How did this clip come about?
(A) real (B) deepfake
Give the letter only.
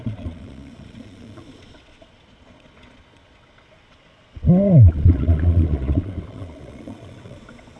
B